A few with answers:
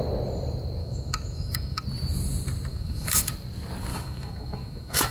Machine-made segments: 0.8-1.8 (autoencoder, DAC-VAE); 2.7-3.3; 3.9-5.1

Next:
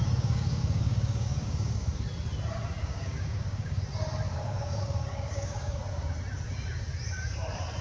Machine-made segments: 0.0-2.0 (codec, DAC); 2.8-3.8; 4.3-5.8

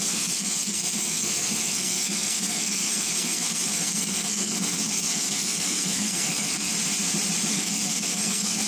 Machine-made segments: 0.0-6.7 (codec, SNAC); 7.5-8.7